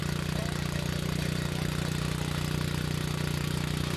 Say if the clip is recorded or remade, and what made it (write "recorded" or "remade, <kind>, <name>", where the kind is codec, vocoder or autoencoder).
recorded